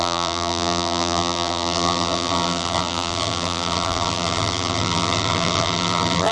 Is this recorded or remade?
remade